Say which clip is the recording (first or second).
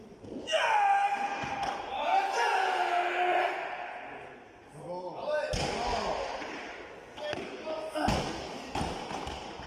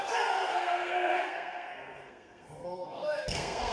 first